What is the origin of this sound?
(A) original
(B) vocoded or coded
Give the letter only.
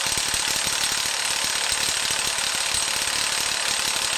A